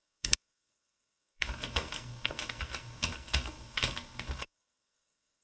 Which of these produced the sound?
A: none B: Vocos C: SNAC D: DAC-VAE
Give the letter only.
C